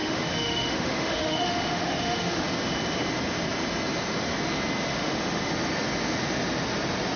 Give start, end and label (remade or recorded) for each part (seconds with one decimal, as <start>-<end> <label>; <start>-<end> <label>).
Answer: 0.0-2.5 remade; 2.5-4.9 recorded; 4.9-5.5 remade; 5.5-7.2 recorded